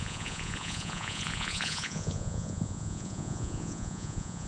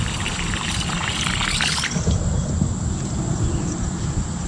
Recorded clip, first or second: second